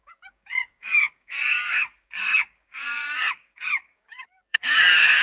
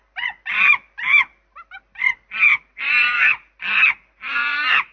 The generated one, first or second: first